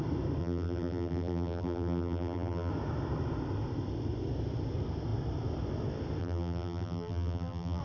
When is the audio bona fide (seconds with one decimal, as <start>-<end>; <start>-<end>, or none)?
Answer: 0.0-0.4; 2.7-6.2